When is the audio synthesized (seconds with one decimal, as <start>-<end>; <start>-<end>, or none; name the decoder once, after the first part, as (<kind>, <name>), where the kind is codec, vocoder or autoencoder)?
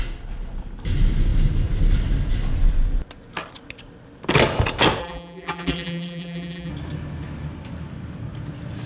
5.0-6.7 (vocoder, BigVGAN v2)